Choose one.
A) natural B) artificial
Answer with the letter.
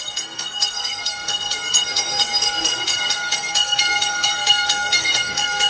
B